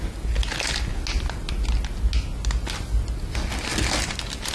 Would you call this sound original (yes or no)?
yes